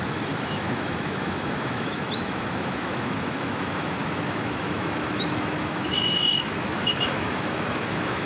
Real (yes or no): no